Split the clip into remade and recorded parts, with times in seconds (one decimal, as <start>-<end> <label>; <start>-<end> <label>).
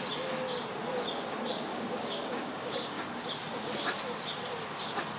0.0-1.7 recorded; 1.7-3.0 remade; 3.0-5.2 recorded